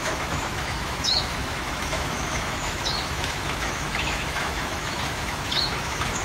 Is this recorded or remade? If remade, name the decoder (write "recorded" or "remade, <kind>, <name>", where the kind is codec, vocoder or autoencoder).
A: remade, autoencoder, DAC-VAE